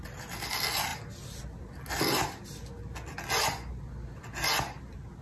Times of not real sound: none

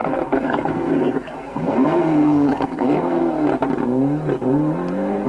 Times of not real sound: 0.0-3.2 (codec, SNAC)

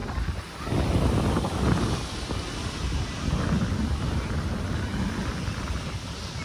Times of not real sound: none

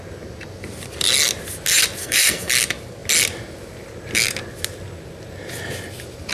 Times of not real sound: 2.0-2.5 (codec, SNAC)

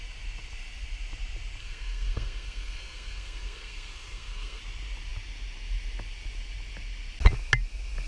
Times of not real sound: 1.6-4.6 (codec, SNAC)